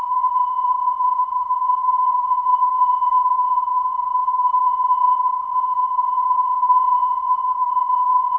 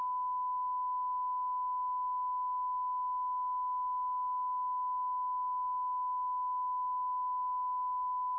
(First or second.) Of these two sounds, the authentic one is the second